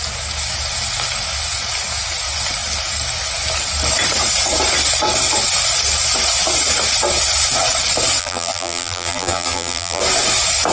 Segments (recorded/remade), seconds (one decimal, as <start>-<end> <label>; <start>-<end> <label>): 0.0-8.2 recorded; 8.2-10.0 remade; 10.0-10.7 recorded